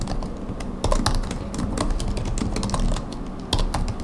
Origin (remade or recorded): recorded